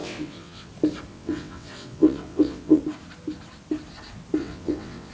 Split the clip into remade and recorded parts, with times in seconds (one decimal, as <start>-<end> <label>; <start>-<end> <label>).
0.0-0.7 remade; 0.7-1.1 recorded; 1.1-2.8 remade; 2.8-4.4 recorded; 4.4-5.1 remade